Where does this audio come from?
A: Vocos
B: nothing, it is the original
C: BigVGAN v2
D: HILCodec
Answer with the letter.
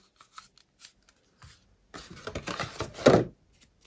B